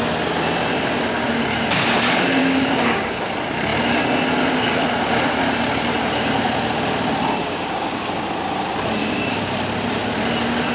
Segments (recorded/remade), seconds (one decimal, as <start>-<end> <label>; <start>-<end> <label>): 0.0-2.4 recorded; 2.4-3.2 remade; 3.2-7.4 recorded; 7.4-8.0 remade; 8.0-9.0 recorded; 9.0-9.6 remade; 9.6-10.7 recorded